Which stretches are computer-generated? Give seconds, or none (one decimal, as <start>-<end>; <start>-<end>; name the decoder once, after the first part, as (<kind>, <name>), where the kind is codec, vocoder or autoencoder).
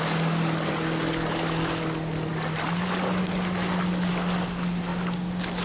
none